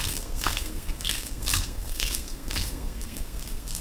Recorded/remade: remade